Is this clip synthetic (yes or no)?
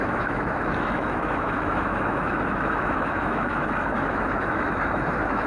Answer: yes